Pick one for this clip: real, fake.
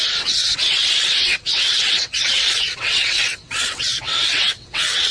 fake